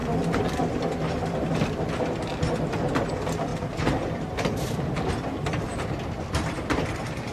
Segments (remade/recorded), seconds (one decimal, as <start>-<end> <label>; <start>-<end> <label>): 0.0-3.5 recorded; 3.5-5.1 remade; 5.1-7.3 recorded